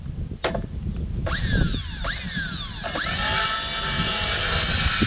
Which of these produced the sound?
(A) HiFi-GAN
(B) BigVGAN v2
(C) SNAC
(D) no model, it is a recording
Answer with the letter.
D